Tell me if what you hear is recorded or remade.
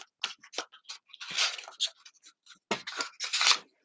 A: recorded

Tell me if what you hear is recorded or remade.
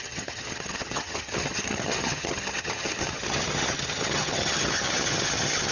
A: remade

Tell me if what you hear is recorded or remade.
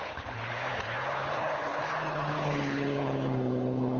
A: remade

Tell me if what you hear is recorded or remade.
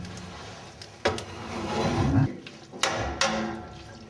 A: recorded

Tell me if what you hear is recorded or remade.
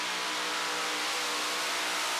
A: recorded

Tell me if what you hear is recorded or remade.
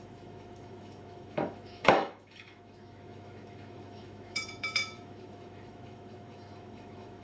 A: remade